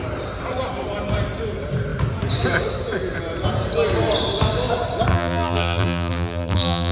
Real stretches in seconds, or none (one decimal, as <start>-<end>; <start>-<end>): 0.0-5.1